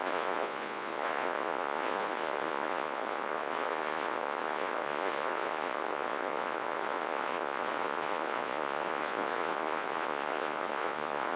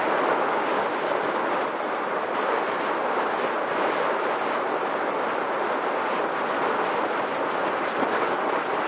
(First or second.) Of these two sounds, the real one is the second